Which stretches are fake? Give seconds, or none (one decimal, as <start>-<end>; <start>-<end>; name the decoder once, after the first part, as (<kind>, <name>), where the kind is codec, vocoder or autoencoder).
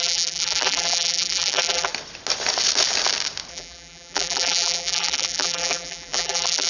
0.0-1.9 (vocoder, BigVGAN v2); 3.5-6.7